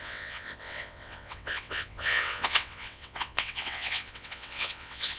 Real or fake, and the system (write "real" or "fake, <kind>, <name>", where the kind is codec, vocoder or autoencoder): fake, vocoder, WaveNeXt